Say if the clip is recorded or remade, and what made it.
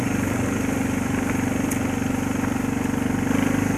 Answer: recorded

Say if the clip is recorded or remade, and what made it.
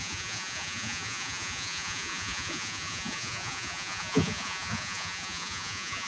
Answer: remade, vocoder, Vocos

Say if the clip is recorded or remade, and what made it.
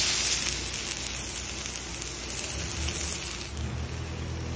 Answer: recorded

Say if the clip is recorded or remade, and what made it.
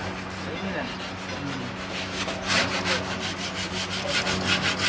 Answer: recorded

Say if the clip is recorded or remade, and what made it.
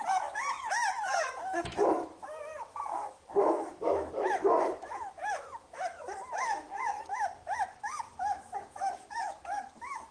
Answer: remade, autoencoder, DAC-VAE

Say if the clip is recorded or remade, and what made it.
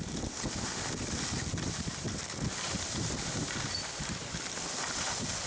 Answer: recorded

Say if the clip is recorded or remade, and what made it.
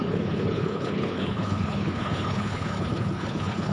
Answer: remade, codec, HILCodec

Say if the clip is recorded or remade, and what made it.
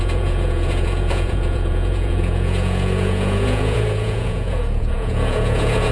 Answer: remade, vocoder, Vocos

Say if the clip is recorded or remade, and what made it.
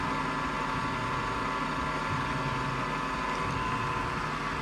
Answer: recorded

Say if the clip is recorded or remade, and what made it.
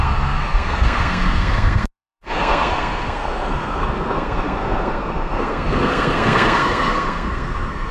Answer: remade, codec, SNAC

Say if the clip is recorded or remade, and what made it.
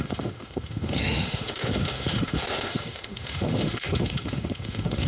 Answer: remade, autoencoder, DAC-VAE